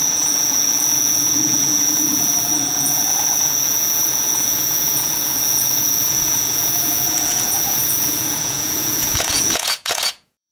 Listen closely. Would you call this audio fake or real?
fake